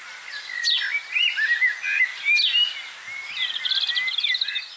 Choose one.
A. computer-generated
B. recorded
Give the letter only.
B